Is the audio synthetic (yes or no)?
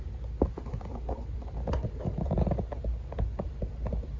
yes